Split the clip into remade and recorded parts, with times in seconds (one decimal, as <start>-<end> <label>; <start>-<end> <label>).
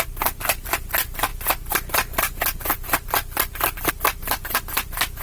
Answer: 0.0-5.2 recorded